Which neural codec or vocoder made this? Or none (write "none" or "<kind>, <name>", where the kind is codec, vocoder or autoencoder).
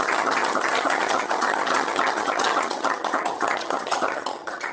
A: vocoder, HiFi-GAN